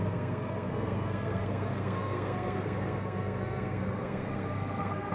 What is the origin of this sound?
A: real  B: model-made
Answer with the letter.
B